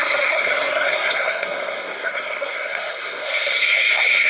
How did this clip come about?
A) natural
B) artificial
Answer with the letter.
B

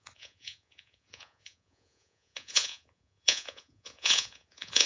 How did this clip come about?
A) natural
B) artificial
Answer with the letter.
B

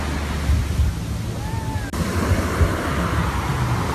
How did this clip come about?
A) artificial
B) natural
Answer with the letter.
B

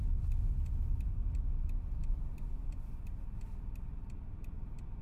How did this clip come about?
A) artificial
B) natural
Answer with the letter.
B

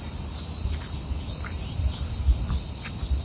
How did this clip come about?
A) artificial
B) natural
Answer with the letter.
B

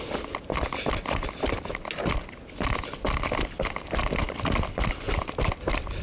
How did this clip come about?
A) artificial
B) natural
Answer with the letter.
B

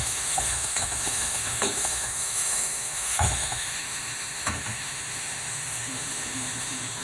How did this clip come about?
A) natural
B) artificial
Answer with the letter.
B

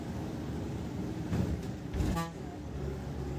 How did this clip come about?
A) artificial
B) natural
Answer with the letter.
A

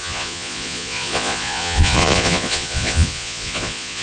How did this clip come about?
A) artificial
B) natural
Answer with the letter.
A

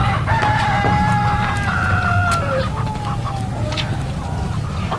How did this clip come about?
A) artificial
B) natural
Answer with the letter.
B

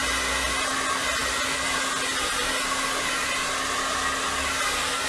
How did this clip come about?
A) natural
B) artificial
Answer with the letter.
A